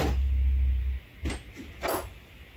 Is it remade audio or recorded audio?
recorded